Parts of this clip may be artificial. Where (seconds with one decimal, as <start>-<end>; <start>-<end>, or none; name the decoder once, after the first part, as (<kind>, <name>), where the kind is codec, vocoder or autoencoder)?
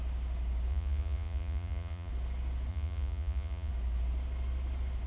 0.7-2.1 (vocoder, Vocos); 2.7-3.7